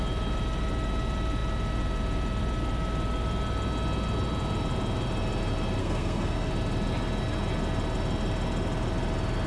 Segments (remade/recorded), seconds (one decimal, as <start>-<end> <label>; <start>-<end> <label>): 0.0-5.8 recorded; 5.8-6.5 remade; 6.5-9.5 recorded